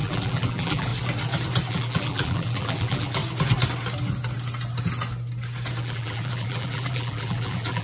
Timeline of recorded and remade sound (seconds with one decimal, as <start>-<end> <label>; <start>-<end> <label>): 0.0-0.9 remade; 0.9-1.7 recorded; 1.7-3.2 remade; 3.2-5.8 recorded; 5.8-7.8 remade